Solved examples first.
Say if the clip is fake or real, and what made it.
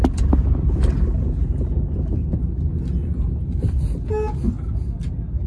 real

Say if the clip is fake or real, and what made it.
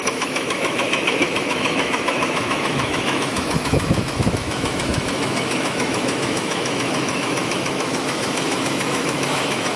fake, autoencoder, DAC-VAE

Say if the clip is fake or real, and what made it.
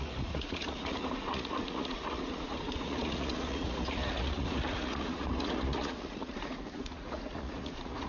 fake, vocoder, Vocos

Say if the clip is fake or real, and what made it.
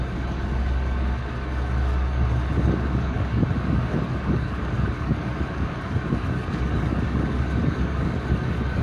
fake, codec, DAC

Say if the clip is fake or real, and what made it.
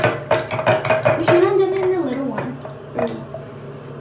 real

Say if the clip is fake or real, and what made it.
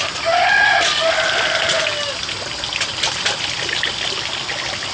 real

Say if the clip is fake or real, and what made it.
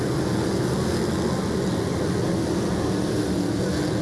real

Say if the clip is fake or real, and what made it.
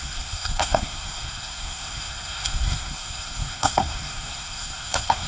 fake, codec, SNAC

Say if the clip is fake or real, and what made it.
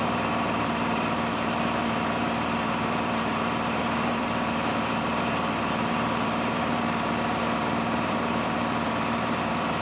fake, vocoder, BigVGAN v2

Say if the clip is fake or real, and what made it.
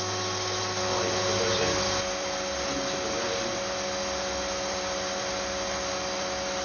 real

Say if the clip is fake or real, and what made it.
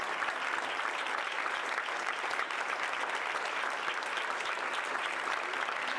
fake, vocoder, BigVGAN v2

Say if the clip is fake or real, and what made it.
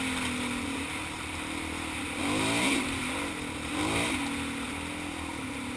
real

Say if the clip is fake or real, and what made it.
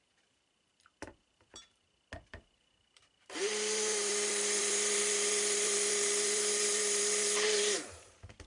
fake, vocoder, BigVGAN v2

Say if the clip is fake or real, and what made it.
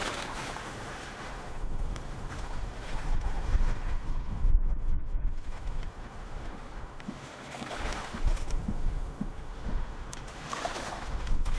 fake, autoencoder, DAC-VAE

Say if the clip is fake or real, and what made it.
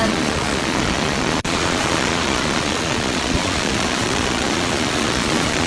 fake, vocoder, Vocos